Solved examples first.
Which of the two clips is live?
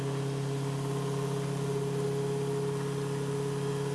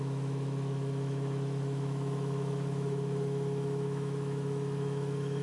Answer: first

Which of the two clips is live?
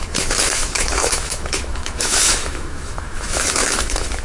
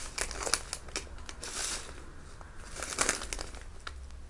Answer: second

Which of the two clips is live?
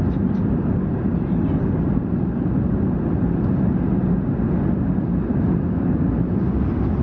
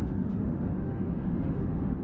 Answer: first